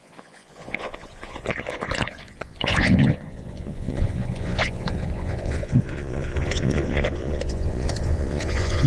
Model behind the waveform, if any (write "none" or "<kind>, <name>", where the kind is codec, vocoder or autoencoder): vocoder, Vocos